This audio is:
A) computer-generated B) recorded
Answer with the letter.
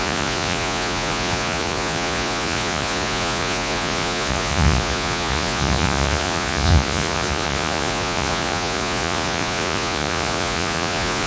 A